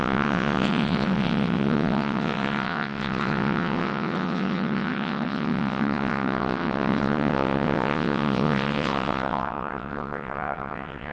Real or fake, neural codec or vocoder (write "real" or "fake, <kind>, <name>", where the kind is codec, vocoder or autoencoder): fake, vocoder, WaveNeXt